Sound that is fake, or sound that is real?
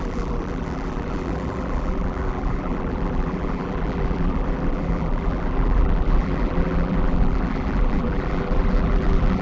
fake